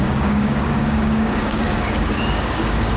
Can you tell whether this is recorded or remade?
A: remade